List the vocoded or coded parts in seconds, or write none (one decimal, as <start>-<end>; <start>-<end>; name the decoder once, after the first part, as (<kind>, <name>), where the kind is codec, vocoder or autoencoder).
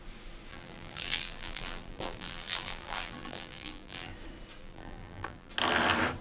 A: 0.5-4.1 (vocoder, BigVGAN v2); 4.6-5.5